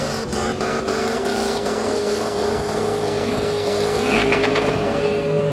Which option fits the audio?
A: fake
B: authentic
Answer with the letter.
A